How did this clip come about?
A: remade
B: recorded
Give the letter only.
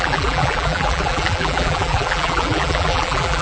A